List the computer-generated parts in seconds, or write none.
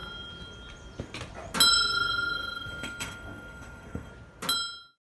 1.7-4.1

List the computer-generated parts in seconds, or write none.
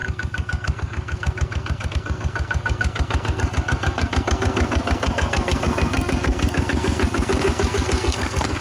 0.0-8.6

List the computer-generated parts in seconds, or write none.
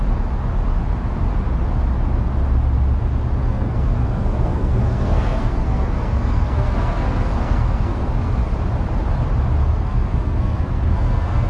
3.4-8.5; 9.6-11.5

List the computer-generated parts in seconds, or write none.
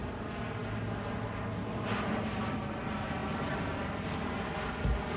none